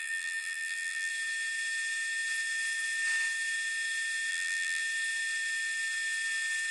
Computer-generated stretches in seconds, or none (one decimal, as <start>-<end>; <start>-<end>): 0.0-1.1; 4.3-4.8